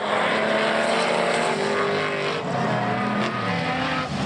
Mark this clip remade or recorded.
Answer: recorded